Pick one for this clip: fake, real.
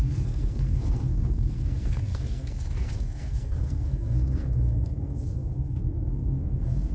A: fake